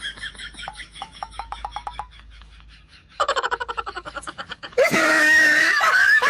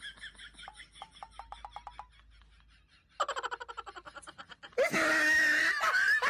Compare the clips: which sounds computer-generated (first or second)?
first